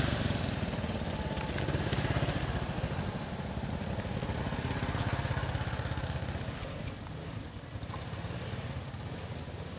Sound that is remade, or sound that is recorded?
recorded